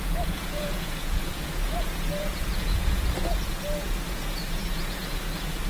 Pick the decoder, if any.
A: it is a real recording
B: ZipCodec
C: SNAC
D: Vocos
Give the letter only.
D